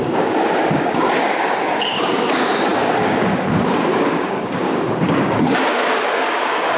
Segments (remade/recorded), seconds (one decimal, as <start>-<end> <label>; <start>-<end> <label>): 0.0-6.8 remade